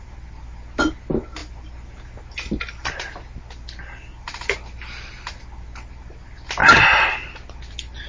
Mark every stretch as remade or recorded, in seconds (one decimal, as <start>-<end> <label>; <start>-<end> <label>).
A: 0.0-8.1 recorded